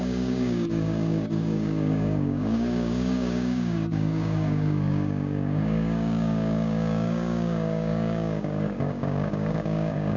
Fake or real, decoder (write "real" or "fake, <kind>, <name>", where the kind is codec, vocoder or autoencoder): fake, codec, DAC